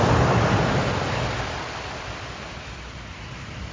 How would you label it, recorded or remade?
recorded